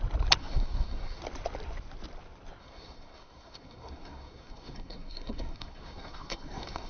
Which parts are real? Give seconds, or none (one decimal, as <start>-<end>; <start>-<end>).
0.0-0.4; 1.2-2.6